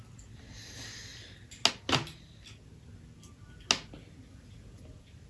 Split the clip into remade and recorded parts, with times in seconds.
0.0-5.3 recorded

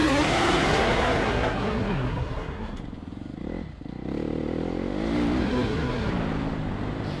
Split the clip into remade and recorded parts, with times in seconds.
0.0-2.8 remade; 2.8-5.4 recorded; 5.4-6.1 remade; 6.1-7.2 recorded

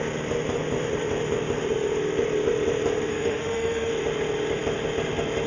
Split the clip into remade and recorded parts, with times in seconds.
0.0-3.1 recorded; 3.1-3.9 remade; 3.9-5.5 recorded

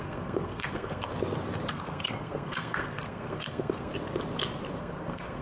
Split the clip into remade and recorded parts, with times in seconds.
0.0-1.1 remade; 1.1-1.7 recorded; 1.7-3.9 remade; 3.9-4.8 recorded; 4.8-5.4 remade

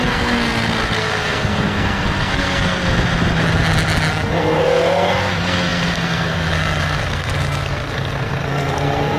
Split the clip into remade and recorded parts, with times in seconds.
0.0-2.8 remade; 2.8-4.1 recorded; 4.1-9.2 remade

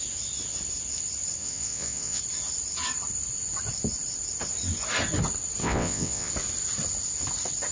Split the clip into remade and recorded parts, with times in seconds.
0.0-1.4 recorded; 1.4-2.2 remade; 2.2-5.6 recorded; 5.6-6.3 remade; 6.3-7.7 recorded

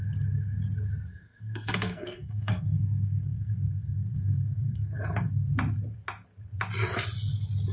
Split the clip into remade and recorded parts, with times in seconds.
0.0-1.1 recorded; 1.1-5.3 remade; 5.3-7.7 recorded

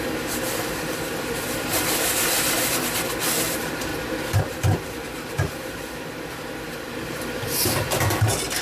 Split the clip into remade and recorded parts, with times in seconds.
0.0-3.9 remade; 3.9-4.4 recorded; 4.4-8.6 remade